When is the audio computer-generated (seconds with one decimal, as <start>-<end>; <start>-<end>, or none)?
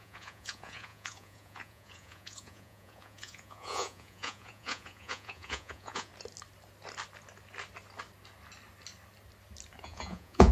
0.0-6.1; 9.8-10.5